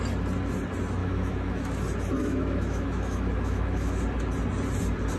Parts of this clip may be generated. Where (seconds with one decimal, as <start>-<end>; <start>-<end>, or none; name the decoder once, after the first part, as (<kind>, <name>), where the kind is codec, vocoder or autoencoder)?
1.0-1.8 (autoencoder, DAC-VAE); 2.2-4.0